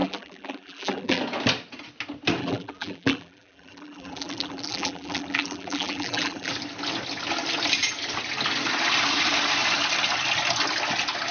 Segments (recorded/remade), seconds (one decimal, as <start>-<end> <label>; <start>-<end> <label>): 0.0-1.2 remade; 1.2-2.4 recorded; 2.4-6.5 remade; 6.5-11.3 recorded